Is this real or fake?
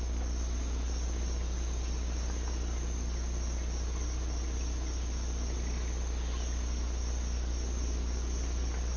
real